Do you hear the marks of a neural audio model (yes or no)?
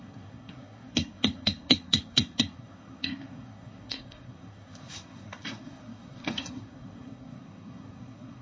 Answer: yes